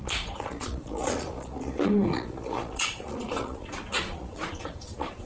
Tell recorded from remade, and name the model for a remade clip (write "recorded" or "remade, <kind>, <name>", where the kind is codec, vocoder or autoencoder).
remade, vocoder, Vocos